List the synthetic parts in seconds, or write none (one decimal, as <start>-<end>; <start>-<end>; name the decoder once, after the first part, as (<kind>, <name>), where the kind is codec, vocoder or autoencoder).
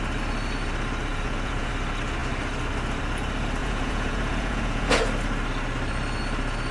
1.1-1.7 (vocoder, Vocos); 3.6-5.0